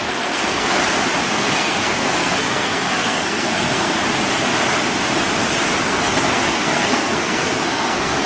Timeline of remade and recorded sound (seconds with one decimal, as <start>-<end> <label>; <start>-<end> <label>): 0.0-0.8 remade; 0.8-1.3 recorded; 1.3-4.0 remade; 4.0-5.8 recorded; 5.8-8.3 remade